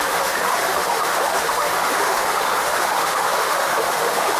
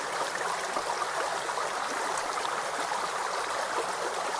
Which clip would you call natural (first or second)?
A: second